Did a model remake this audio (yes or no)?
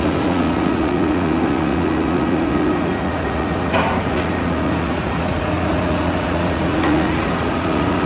yes